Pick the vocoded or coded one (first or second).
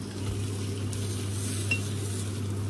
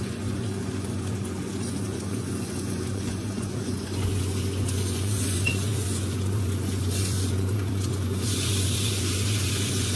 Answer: second